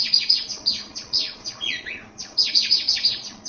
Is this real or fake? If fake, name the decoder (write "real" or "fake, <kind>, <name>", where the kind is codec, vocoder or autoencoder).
fake, vocoder, Vocos